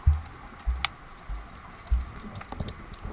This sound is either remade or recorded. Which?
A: recorded